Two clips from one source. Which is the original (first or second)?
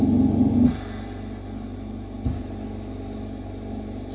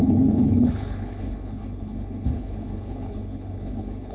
first